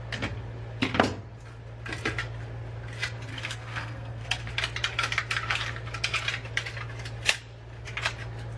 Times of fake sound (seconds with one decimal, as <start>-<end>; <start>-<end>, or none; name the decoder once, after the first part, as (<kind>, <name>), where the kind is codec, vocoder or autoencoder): 3.3-4.5 (codec, SNAC)